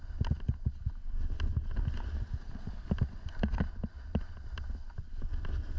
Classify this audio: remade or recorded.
recorded